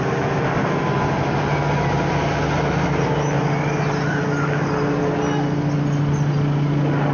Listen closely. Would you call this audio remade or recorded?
recorded